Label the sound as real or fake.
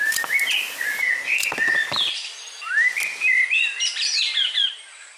real